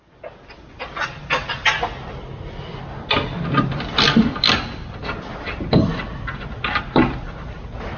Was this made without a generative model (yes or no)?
yes